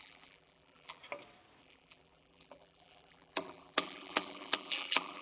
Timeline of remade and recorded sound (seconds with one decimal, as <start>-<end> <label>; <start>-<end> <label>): 0.0-1.0 remade; 1.0-1.6 recorded; 1.6-5.2 remade